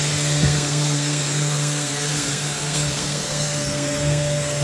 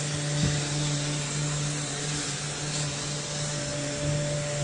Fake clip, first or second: first